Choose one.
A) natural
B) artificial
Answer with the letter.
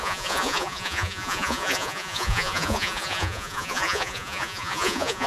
B